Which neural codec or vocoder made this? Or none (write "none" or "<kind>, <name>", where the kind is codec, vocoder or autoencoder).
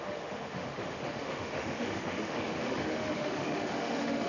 autoencoder, DAC-VAE